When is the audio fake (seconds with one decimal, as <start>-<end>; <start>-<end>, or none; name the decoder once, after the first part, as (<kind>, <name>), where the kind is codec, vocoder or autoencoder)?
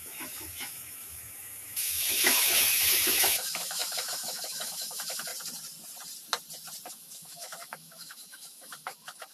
0.0-5.3 (autoencoder, DAC-VAE); 6.9-9.3